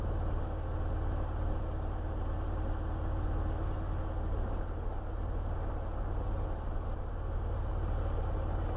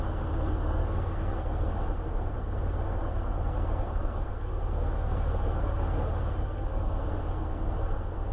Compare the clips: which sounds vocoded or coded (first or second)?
second